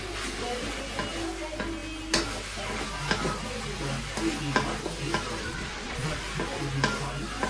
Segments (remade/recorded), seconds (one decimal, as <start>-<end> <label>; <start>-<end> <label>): 0.0-5.4 recorded; 5.4-6.2 remade; 6.2-7.5 recorded